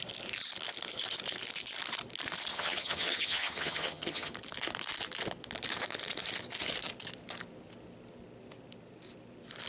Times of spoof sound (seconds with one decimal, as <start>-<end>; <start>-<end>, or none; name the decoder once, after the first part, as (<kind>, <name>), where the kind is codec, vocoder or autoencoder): 2.5-4.3 (vocoder, HiFi-GAN)